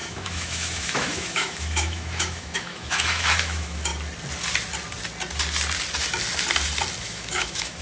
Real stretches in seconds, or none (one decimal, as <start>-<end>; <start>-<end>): 3.9-7.0